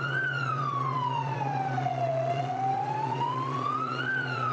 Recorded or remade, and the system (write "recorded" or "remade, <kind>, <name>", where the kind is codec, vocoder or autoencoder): remade, vocoder, WaveNeXt